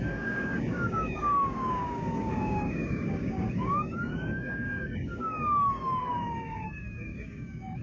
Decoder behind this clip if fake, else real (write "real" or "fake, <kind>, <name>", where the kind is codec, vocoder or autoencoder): fake, codec, DAC